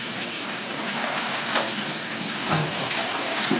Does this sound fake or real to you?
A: fake